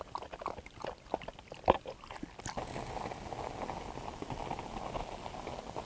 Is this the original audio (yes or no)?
yes